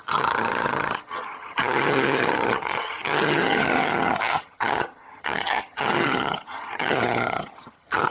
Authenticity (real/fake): fake